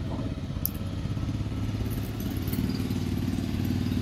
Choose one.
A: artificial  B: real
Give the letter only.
B